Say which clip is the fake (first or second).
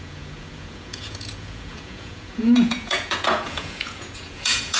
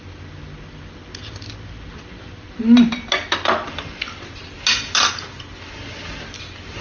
first